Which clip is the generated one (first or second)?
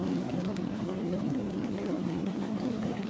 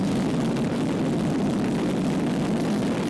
first